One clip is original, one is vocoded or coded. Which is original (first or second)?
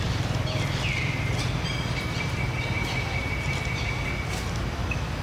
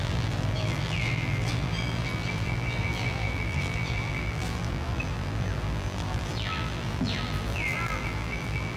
first